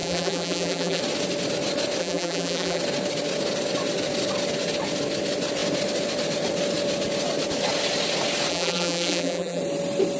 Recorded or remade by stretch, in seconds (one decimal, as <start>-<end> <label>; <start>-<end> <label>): 0.0-1.0 remade; 1.0-2.0 recorded; 2.0-2.8 remade; 2.8-8.5 recorded; 8.5-9.6 remade; 9.6-10.2 recorded